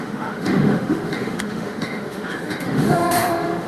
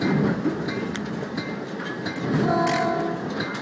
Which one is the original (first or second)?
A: second